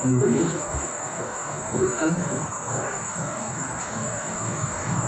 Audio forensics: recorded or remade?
remade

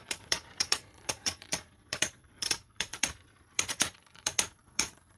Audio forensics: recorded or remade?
remade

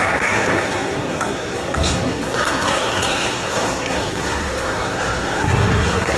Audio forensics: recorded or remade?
remade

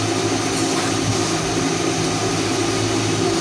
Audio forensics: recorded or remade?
recorded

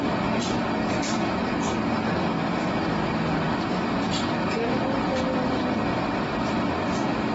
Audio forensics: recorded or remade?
recorded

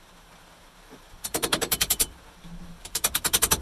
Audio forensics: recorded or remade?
remade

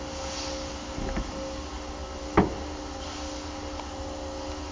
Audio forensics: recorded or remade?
recorded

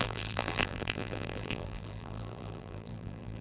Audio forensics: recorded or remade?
remade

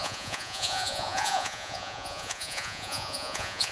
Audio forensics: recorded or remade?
remade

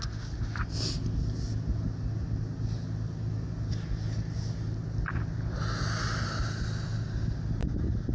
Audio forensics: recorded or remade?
recorded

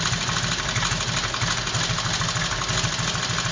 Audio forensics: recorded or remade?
recorded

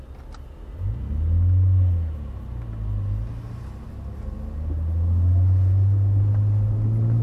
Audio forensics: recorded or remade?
recorded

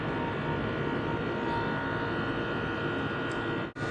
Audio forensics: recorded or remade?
recorded